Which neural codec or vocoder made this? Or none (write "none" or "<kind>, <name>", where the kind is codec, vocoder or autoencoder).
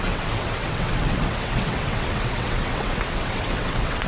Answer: vocoder, WaveNeXt